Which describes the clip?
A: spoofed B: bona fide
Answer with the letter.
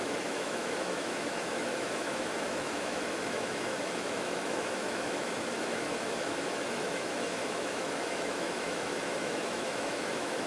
A